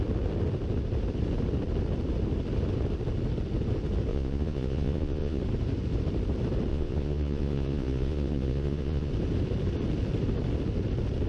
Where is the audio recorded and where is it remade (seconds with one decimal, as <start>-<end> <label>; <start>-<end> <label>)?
0.0-4.1 recorded; 4.1-5.4 remade; 5.4-6.7 recorded; 6.7-9.1 remade; 9.1-11.3 recorded

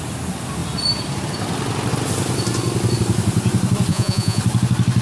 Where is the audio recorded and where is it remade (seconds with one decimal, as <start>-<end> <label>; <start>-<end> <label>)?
0.0-3.9 recorded; 3.9-4.4 remade; 4.4-5.0 recorded

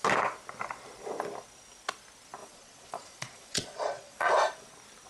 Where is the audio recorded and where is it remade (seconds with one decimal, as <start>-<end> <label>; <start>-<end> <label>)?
0.0-2.4 recorded; 2.4-4.3 remade; 4.3-5.1 recorded

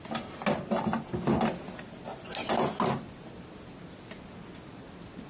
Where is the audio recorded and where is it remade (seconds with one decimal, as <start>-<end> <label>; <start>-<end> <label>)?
0.0-5.3 recorded

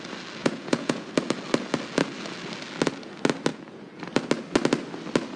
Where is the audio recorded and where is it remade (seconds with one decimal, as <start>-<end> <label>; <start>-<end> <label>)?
0.0-0.4 recorded; 0.4-1.1 remade; 1.1-3.5 recorded; 3.5-4.0 remade; 4.0-5.4 recorded